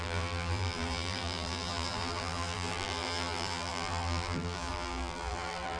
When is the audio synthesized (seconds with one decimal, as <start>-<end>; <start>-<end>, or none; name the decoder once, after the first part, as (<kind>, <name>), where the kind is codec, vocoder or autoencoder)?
0.0-5.8 (vocoder, BigVGAN v2)